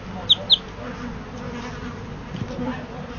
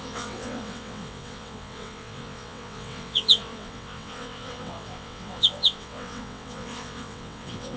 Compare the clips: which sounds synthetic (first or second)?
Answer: second